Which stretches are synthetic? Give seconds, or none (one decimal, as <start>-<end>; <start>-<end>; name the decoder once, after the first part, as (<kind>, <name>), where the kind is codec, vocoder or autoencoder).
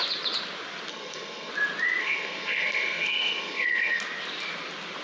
0.9-1.5 (codec, SNAC); 2.0-4.0